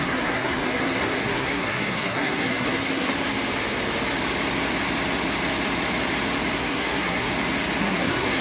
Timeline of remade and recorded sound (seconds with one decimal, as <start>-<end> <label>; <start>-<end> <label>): 0.0-3.1 remade; 3.1-6.6 recorded; 6.6-7.3 remade; 7.3-7.8 recorded; 7.8-8.4 remade